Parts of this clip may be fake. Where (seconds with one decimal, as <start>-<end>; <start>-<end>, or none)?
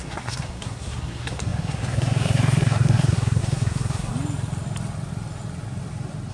0.0-4.1